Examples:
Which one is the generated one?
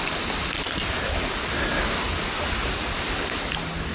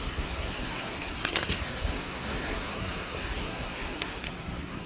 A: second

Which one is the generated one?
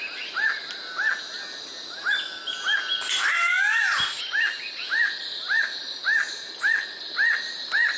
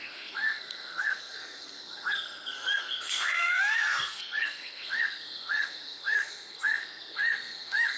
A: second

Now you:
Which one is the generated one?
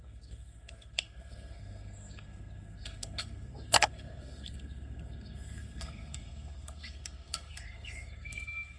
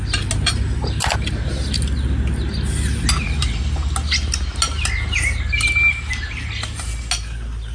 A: first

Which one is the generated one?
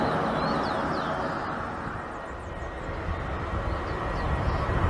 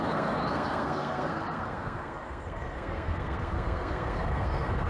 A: second